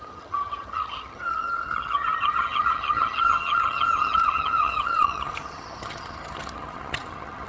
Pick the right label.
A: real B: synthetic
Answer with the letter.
B